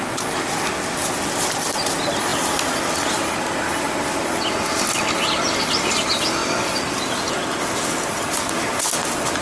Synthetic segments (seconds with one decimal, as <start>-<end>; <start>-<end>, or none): none